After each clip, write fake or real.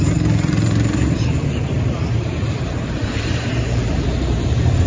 fake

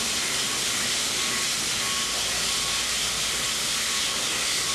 real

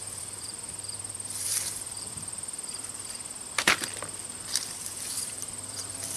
fake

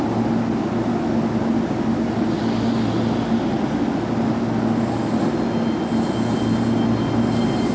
real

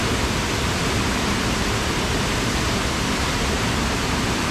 real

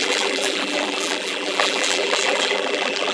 fake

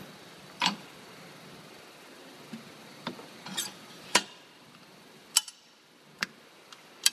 fake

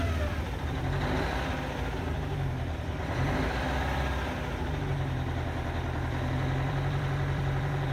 fake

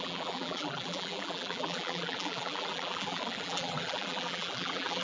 fake